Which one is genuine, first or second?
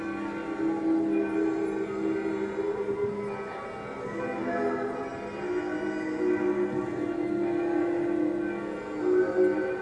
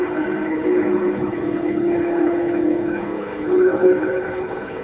first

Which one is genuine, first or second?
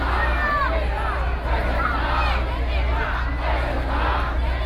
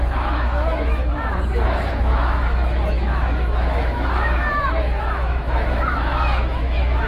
first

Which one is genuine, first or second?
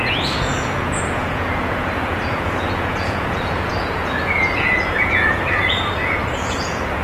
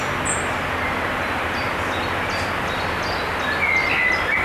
second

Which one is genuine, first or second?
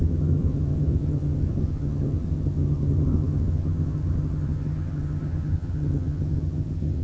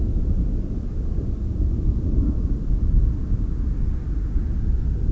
second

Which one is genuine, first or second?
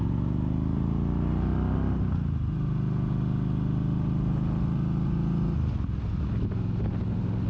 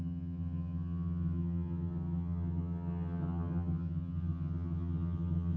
first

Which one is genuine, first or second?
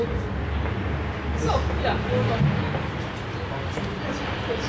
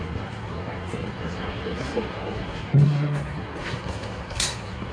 first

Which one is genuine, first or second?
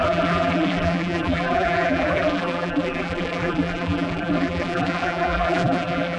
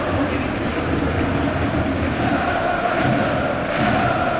second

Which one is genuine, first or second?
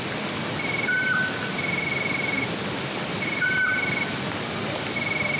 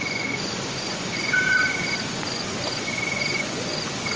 first